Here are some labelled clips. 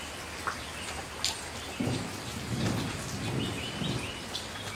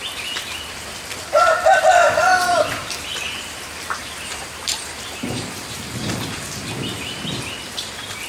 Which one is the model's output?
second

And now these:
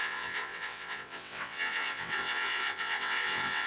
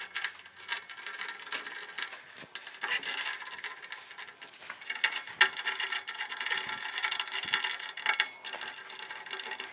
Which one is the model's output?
first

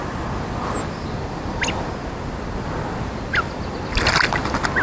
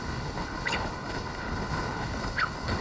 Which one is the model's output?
second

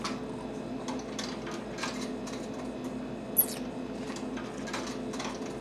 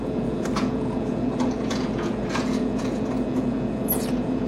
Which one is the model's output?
second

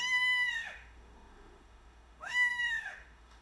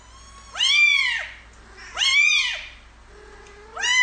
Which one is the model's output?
first